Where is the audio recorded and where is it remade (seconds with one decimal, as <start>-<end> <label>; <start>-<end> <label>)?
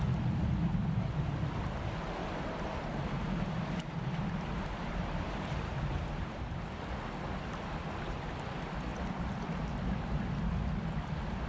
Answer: 0.0-0.8 recorded; 0.8-1.3 remade; 1.3-2.2 recorded; 2.2-6.4 remade; 6.4-11.5 recorded